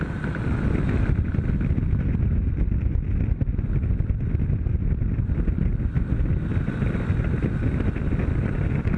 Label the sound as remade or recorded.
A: recorded